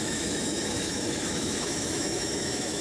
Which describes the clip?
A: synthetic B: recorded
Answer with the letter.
A